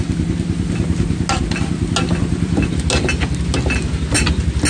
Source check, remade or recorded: recorded